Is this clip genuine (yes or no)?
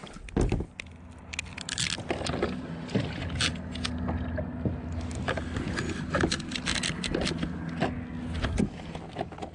yes